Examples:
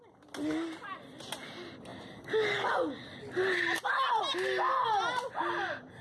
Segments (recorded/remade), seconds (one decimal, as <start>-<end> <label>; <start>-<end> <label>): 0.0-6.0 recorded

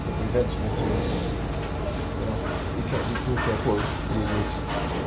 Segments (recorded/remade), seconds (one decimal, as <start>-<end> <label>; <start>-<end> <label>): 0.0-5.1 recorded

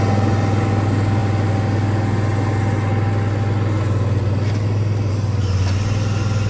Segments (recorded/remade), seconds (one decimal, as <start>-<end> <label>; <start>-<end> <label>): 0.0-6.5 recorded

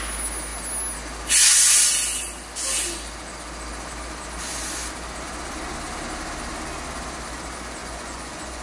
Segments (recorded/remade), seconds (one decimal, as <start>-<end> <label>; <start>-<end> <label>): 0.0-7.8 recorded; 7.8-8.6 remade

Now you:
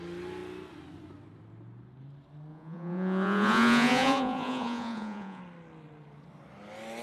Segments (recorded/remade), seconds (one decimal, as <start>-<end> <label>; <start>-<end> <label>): 0.0-2.5 recorded; 2.5-5.4 remade; 5.4-7.0 recorded

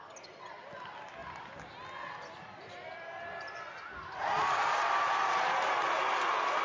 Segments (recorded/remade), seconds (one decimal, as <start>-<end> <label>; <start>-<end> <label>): 0.0-6.6 recorded

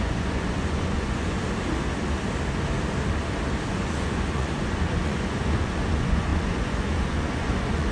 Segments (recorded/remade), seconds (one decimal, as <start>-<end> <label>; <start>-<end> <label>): 0.0-1.4 remade; 1.4-3.7 recorded; 3.7-7.9 remade

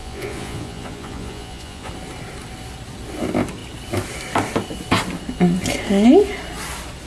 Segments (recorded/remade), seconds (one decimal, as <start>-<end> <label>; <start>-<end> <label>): 0.0-1.9 remade; 1.9-7.1 recorded